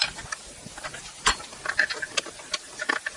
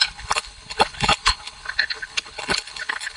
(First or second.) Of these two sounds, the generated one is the second